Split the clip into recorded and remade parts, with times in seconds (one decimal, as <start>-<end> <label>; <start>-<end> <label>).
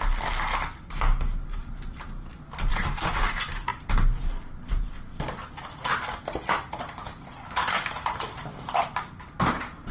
0.0-9.9 recorded